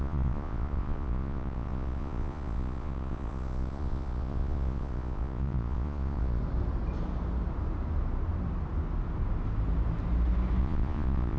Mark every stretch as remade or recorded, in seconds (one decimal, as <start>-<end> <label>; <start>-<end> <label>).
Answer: 0.0-6.4 remade; 6.4-10.6 recorded; 10.6-11.4 remade